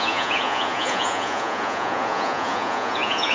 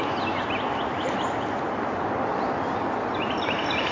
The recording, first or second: second